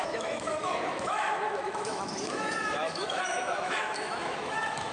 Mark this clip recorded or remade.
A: remade